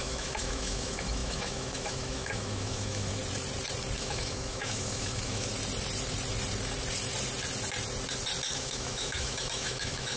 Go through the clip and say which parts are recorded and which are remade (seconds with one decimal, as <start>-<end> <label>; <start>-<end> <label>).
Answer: 0.0-3.2 remade; 3.2-4.0 recorded; 4.0-5.5 remade; 5.5-8.5 recorded; 8.5-10.2 remade